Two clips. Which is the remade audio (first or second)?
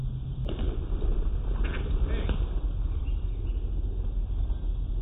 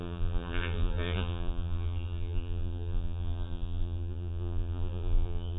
second